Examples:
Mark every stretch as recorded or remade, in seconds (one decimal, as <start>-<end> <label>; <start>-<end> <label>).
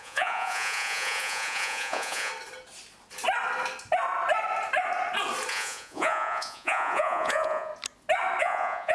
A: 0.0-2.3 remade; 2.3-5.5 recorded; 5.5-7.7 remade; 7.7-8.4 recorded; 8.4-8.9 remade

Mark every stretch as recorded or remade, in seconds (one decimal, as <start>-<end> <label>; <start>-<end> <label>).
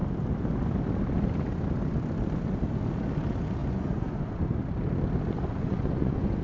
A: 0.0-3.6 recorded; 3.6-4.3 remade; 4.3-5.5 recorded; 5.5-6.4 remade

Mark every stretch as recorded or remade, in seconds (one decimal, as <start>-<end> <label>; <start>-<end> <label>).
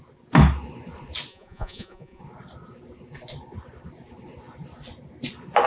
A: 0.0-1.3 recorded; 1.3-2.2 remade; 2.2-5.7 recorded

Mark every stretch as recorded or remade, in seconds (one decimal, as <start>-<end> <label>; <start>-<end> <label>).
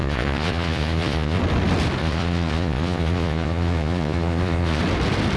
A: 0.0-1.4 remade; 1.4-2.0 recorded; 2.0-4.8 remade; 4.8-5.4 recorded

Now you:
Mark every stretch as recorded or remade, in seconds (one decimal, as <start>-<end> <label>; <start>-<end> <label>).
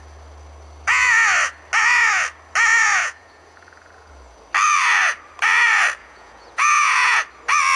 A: 0.0-3.0 recorded; 3.0-4.1 remade; 4.1-6.0 recorded; 6.0-7.2 remade; 7.2-7.8 recorded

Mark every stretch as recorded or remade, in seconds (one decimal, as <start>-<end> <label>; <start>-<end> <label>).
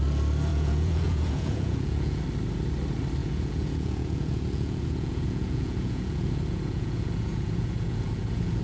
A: 0.0-0.5 recorded; 0.5-2.2 remade; 2.2-3.2 recorded; 3.2-8.6 remade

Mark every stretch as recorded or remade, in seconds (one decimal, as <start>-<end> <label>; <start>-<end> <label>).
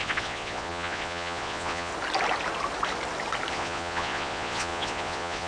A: 0.0-1.9 remade; 1.9-3.5 recorded; 3.5-5.5 remade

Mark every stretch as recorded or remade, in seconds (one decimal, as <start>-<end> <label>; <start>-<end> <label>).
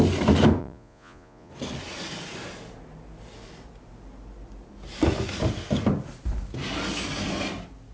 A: 0.0-0.6 recorded; 0.6-1.5 remade; 1.5-7.9 recorded